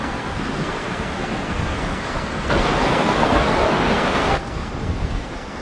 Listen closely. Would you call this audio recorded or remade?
remade